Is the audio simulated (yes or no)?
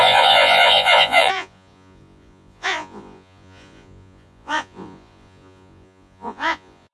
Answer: yes